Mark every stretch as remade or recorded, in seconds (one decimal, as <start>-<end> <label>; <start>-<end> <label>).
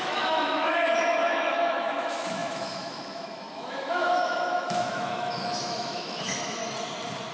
0.0-6.6 remade; 6.6-7.3 recorded